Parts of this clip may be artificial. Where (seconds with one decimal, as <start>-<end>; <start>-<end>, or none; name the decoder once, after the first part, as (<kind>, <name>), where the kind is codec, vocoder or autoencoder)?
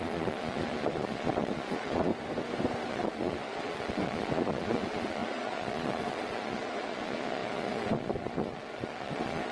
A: 0.0-2.1 (vocoder, Vocos); 2.9-9.5